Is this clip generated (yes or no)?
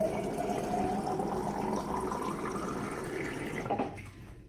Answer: no